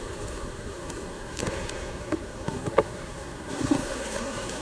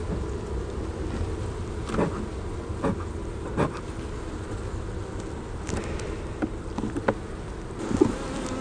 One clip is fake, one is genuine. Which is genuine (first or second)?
second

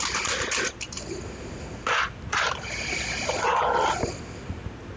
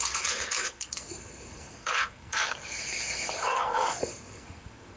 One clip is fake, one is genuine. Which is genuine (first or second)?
first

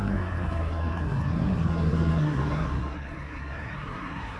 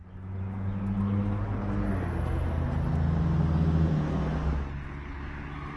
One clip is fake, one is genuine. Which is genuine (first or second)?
second